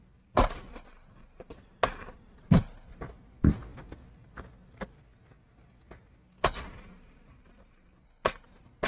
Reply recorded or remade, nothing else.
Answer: recorded